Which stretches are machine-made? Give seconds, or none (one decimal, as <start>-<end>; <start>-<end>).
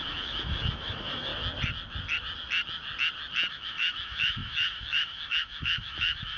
0.0-1.3; 3.5-6.4